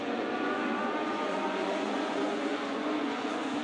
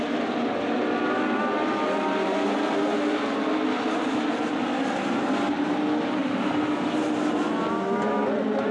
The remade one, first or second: first